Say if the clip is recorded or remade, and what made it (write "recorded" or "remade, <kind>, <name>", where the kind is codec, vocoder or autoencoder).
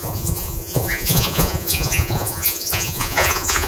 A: remade, vocoder, Vocos